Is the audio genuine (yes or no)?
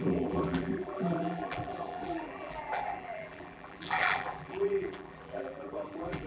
no